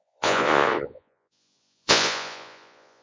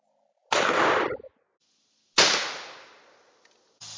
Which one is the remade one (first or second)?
first